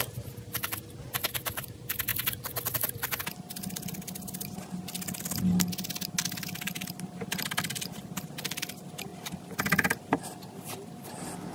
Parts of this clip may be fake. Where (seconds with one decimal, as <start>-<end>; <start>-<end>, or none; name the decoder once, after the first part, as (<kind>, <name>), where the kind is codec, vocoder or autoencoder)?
none